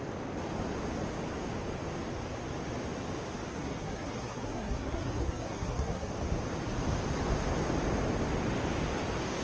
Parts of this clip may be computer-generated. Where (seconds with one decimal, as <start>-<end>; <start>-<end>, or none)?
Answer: 3.5-6.1